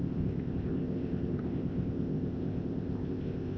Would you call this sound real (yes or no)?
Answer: no